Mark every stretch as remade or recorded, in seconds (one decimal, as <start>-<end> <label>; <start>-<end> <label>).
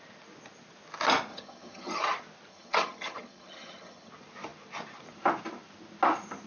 0.0-1.3 recorded; 1.3-2.0 remade; 2.0-2.5 recorded; 2.5-4.1 remade; 4.1-6.5 recorded